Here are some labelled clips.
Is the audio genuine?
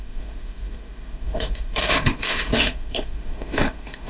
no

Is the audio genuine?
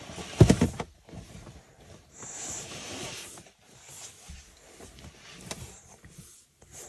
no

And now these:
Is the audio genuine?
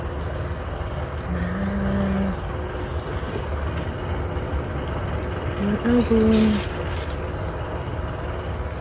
yes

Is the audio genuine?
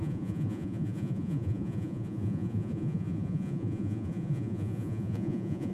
no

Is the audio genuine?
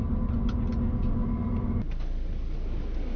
yes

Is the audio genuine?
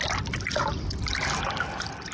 yes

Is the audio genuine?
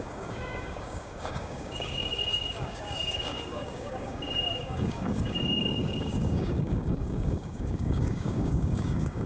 no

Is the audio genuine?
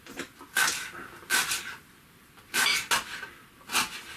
yes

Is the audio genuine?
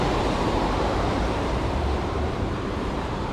no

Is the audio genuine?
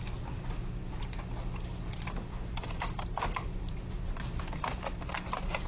no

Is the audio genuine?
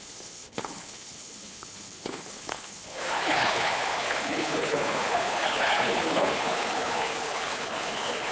no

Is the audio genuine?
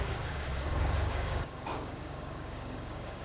no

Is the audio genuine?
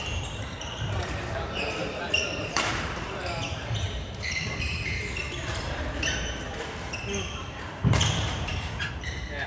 no